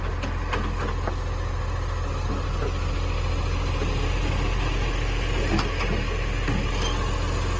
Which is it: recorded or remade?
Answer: recorded